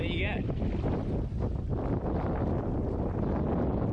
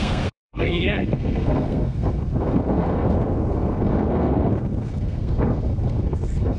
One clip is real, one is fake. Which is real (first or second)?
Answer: first